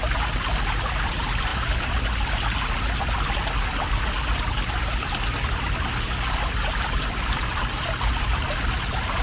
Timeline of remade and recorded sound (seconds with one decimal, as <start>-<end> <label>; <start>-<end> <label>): 0.0-1.0 recorded; 1.0-1.5 remade; 1.5-6.0 recorded; 6.0-9.2 remade